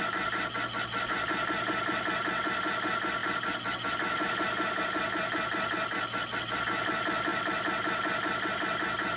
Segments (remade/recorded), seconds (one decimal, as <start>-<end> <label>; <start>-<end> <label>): 0.0-9.2 recorded